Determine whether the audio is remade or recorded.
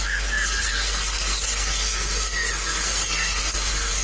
remade